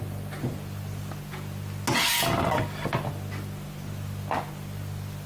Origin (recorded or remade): recorded